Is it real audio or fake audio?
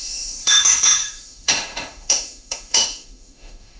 fake